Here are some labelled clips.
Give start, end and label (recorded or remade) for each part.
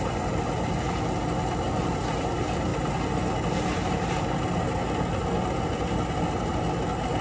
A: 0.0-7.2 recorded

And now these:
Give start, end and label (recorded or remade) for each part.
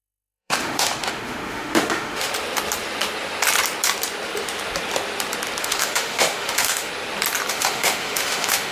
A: 0.0-2.3 remade; 2.3-5.6 recorded; 5.6-6.9 remade; 6.9-7.5 recorded; 7.5-8.7 remade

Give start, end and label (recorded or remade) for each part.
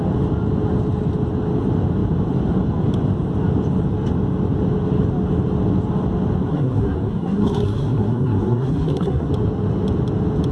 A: 0.0-6.5 recorded; 6.5-9.3 remade; 9.3-10.5 recorded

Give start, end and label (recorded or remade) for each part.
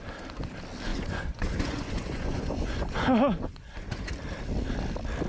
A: 0.0-0.9 recorded; 0.9-4.1 remade; 4.1-5.3 recorded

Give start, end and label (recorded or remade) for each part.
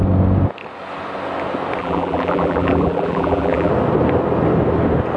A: 0.0-1.8 recorded; 1.8-3.7 remade; 3.7-5.2 recorded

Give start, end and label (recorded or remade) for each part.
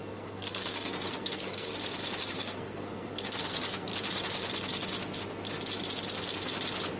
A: 0.0-1.7 remade; 1.7-2.2 recorded; 2.2-3.9 remade; 3.9-7.0 recorded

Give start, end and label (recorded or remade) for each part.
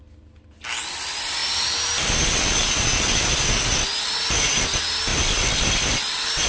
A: 0.0-6.5 recorded